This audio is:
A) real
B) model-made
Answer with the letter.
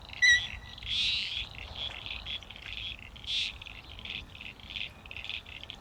A